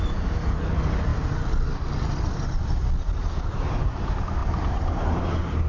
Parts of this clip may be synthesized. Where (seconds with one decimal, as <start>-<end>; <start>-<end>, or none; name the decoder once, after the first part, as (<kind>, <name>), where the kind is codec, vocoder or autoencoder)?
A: none